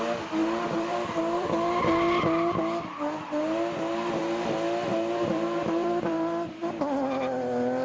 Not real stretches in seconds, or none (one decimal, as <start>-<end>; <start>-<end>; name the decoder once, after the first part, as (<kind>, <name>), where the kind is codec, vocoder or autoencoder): 0.4-1.8 (vocoder, BigVGAN v2); 4.9-6.6